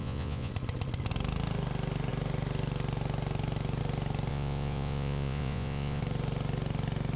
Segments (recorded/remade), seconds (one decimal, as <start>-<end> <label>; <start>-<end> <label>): 0.0-0.5 remade; 0.5-4.3 recorded; 4.3-6.0 remade; 6.0-7.2 recorded